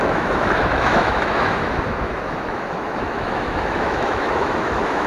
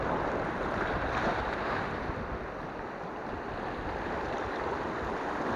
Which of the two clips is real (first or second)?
second